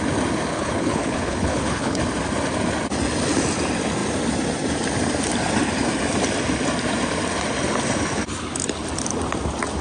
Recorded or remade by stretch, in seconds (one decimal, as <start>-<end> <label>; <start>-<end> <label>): 0.0-0.5 recorded; 0.5-2.0 remade; 2.0-9.8 recorded